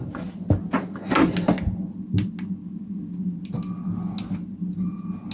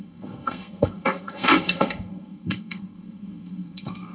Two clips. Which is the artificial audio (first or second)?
second